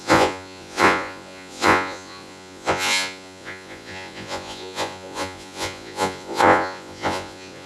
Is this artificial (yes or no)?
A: yes